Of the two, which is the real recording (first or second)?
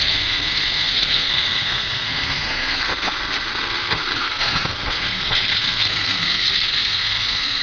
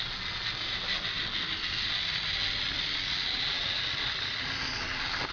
second